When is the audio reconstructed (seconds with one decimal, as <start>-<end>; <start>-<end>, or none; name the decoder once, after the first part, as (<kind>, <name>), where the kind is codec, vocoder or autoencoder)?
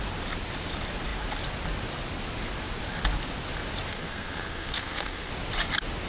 3.9-5.3 (codec, SNAC)